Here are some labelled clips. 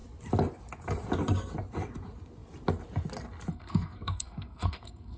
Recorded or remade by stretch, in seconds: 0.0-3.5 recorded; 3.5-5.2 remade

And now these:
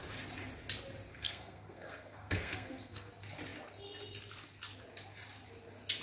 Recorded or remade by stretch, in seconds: 0.0-1.1 recorded; 1.1-3.1 remade; 3.1-6.0 recorded

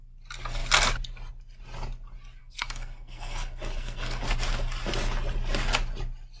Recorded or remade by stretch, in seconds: 0.0-2.4 recorded; 2.4-4.2 remade; 4.2-6.4 recorded

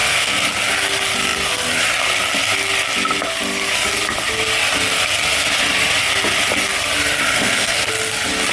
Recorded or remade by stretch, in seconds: 0.0-0.5 remade; 0.5-7.3 recorded; 7.3-7.9 remade; 7.9-8.5 recorded

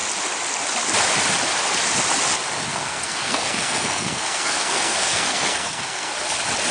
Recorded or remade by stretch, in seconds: 0.0-2.7 recorded; 2.7-6.1 remade; 6.1-6.7 recorded

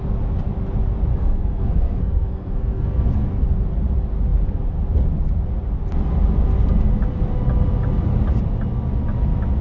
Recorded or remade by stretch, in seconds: 0.0-1.1 recorded; 1.1-3.3 remade; 3.3-9.6 recorded